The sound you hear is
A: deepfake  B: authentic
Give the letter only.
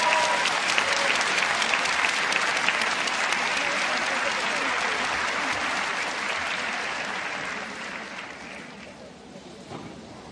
B